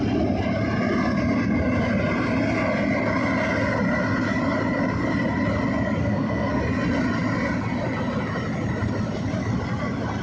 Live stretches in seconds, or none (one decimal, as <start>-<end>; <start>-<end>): 0.0-6.0; 6.6-10.2